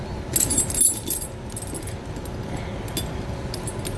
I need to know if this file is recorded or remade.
recorded